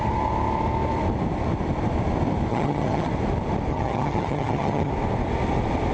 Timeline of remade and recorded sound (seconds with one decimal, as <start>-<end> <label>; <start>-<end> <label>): 0.0-2.5 recorded; 2.5-3.1 remade; 3.1-3.7 recorded; 3.7-4.9 remade; 4.9-5.9 recorded